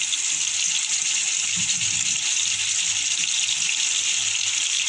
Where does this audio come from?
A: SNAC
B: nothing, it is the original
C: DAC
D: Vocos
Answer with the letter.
B